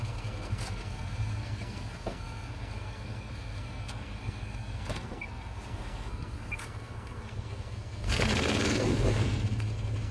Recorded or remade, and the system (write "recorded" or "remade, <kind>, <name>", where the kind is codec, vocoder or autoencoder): remade, codec, SNAC